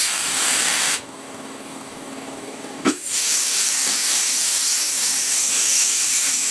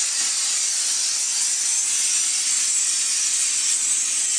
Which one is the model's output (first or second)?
first